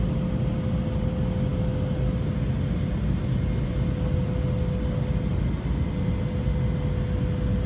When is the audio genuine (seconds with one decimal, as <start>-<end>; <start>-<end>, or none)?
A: 0.0-7.7